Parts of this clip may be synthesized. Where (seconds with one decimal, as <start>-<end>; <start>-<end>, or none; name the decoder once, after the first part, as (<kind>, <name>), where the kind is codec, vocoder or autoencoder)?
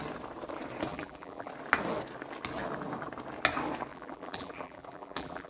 0.9-1.5 (vocoder, BigVGAN v2); 3.9-5.5